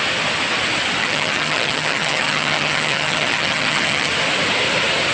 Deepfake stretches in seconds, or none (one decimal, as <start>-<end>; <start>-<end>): 1.0-4.1